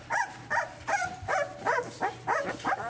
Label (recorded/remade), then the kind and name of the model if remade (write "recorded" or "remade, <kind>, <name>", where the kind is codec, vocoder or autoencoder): recorded